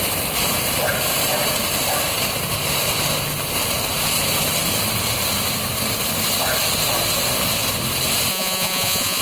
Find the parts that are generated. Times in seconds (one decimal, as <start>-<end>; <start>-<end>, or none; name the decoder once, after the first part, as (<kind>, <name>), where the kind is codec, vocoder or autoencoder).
8.3-9.2 (vocoder, Vocos)